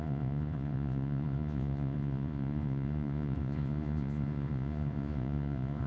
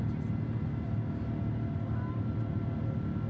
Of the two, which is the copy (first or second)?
first